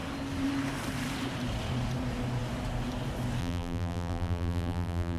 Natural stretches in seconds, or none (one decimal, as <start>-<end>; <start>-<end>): 0.0-3.4

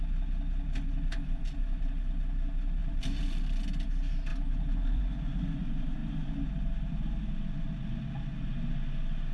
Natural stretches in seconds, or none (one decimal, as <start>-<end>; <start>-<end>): 0.0-2.8; 3.4-4.3; 5.0-9.3

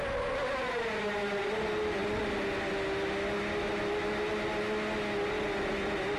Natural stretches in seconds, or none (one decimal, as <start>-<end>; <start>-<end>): 0.0-6.2

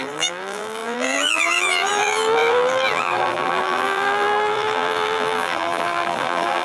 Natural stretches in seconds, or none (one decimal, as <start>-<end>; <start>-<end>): none

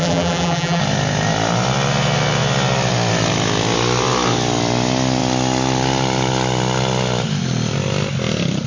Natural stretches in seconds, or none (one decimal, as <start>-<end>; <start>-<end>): 0.8-8.7

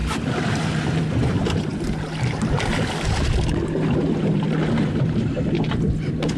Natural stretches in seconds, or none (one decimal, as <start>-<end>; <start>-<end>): 0.0-0.6; 1.7-4.9